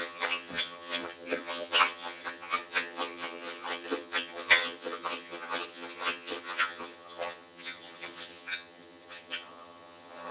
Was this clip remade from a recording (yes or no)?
yes